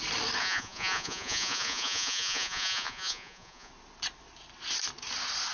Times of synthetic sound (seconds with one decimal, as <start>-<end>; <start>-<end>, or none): 0.4-3.7